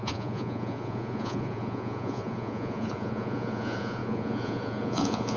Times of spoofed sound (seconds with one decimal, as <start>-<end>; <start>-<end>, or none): 0.0-5.4